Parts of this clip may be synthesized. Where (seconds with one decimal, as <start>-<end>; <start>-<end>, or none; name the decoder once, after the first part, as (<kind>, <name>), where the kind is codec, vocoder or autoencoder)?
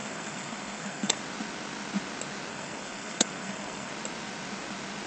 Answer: 0.0-1.2 (codec, SNAC); 2.5-3.9